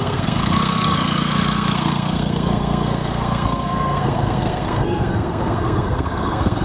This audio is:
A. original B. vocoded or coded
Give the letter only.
B